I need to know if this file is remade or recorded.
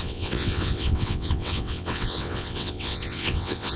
remade